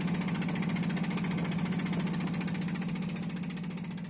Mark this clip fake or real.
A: real